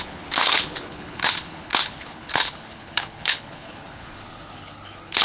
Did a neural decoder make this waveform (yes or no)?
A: yes